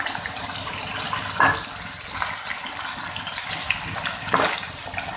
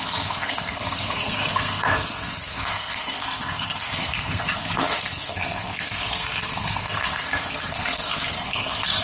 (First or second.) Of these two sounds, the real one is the first